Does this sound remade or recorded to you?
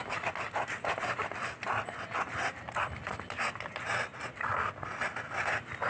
recorded